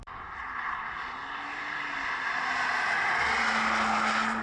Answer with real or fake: real